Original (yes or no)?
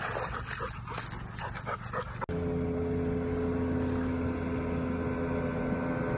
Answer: yes